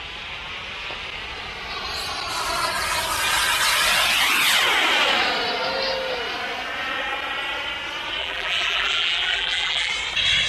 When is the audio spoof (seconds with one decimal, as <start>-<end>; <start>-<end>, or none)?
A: 8.2-9.9